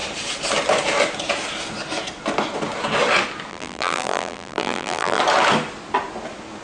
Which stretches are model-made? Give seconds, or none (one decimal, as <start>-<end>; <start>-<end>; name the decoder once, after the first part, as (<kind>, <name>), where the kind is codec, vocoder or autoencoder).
3.5-5.2 (vocoder, BigVGAN v2)